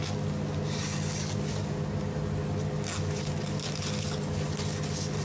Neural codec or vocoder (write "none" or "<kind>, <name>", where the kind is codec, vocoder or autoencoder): none